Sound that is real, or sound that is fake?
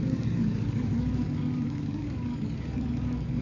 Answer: fake